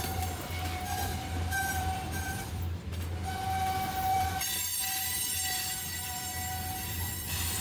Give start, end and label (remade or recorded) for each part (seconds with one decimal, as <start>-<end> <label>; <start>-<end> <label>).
0.0-1.1 remade; 1.1-1.7 recorded; 1.7-2.9 remade; 2.9-4.1 recorded; 4.1-6.3 remade; 6.3-6.9 recorded; 6.9-7.6 remade